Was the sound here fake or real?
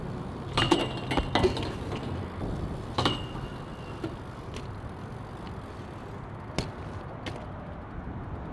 real